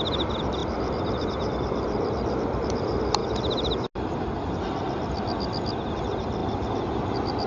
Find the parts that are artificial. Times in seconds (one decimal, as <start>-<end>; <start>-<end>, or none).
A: 0.0-3.2; 5.9-6.4; 7.1-7.5